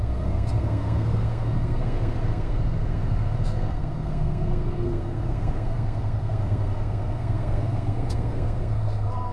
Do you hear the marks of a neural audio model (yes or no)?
yes